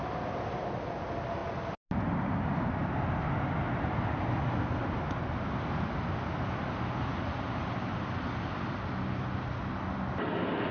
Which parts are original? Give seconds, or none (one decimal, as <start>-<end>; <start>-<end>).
0.0-10.7